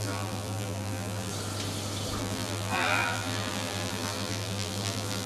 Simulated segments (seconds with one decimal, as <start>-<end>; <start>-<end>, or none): 0.0-1.3; 2.2-5.3